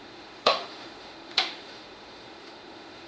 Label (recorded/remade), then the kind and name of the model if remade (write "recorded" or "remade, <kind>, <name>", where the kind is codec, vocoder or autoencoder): remade, autoencoder, DAC-VAE